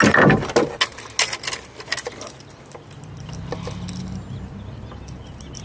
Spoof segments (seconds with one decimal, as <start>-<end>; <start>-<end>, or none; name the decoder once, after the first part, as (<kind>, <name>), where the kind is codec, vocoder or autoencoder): none